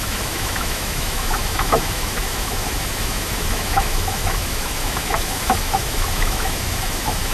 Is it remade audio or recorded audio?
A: remade